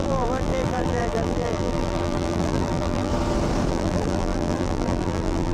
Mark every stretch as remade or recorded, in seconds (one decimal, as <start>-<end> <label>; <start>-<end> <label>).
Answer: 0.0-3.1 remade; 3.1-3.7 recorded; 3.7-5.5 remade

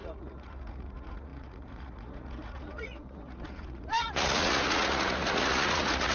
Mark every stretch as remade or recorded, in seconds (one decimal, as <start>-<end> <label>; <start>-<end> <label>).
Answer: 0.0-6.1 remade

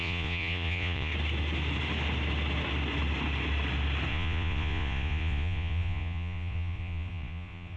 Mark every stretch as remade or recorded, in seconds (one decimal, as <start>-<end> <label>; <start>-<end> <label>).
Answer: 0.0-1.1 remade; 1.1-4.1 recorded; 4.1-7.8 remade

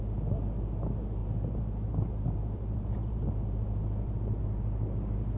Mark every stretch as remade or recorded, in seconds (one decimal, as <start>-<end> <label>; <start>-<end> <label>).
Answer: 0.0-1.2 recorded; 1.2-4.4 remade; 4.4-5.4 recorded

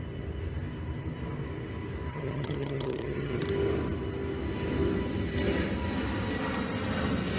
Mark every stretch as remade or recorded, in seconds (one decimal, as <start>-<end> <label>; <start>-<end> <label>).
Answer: 0.0-2.1 recorded; 2.1-3.4 remade; 3.4-7.4 recorded

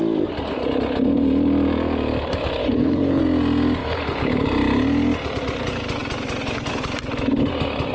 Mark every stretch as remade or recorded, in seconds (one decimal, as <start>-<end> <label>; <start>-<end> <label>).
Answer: 0.0-2.6 recorded; 2.6-3.2 remade; 3.2-3.8 recorded; 3.8-4.3 remade; 4.3-7.9 recorded

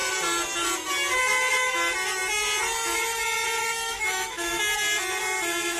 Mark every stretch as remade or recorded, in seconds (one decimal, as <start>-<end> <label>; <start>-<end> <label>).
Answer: 0.0-3.6 recorded; 3.6-4.6 remade; 4.6-5.8 recorded